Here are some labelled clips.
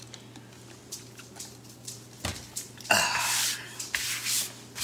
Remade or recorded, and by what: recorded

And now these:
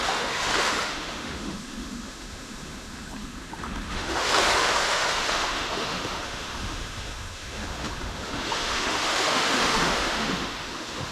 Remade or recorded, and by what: remade, autoencoder, DAC-VAE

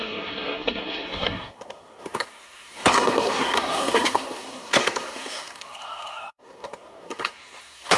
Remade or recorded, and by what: remade, codec, SNAC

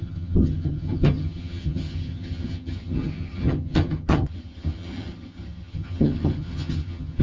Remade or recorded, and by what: remade, vocoder, HiFi-GAN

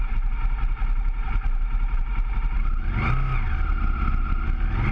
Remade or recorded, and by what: recorded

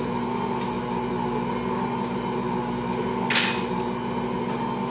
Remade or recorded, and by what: recorded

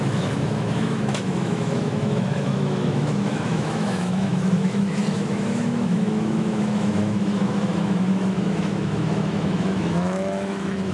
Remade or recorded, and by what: remade, autoencoder, DAC-VAE